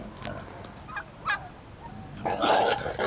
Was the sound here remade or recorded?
recorded